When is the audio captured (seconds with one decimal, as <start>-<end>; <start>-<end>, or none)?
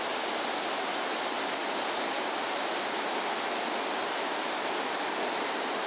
0.0-5.9